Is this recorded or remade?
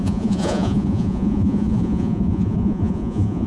remade